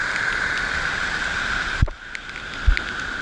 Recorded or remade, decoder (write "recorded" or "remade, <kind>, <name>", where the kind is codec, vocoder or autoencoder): recorded